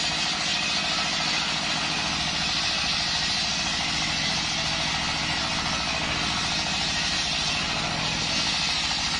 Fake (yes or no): no